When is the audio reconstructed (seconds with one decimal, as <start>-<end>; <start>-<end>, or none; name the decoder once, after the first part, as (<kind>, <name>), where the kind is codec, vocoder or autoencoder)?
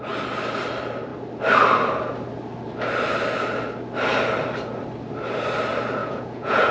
6.0-6.7 (vocoder, Vocos)